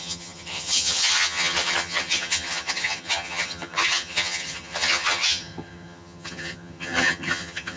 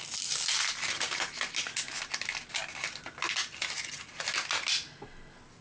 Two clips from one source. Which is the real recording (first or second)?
second